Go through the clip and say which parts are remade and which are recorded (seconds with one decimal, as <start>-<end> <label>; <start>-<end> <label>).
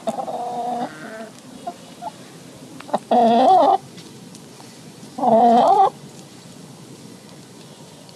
0.0-3.7 recorded; 3.7-8.2 remade